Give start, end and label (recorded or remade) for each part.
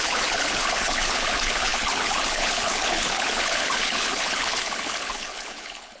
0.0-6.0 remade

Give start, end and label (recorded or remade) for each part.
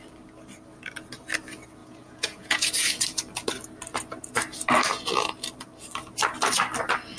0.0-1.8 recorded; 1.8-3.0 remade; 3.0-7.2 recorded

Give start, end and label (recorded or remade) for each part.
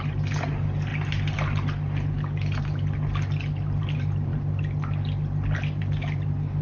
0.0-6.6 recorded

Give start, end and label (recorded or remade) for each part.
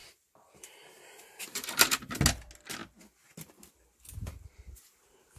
0.0-2.2 remade; 2.2-5.4 recorded